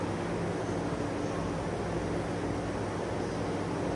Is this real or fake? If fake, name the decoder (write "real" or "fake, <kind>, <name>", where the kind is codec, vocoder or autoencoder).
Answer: real